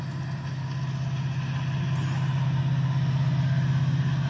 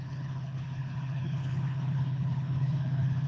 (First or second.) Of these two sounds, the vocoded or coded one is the second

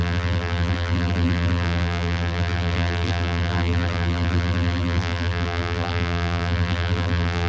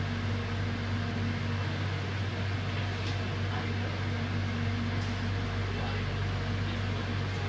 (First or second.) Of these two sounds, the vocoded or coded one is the first